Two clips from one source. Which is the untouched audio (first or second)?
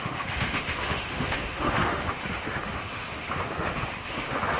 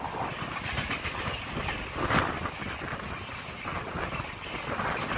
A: second